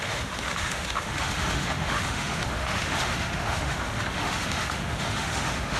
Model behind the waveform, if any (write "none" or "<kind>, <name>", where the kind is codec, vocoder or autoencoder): autoencoder, DAC-VAE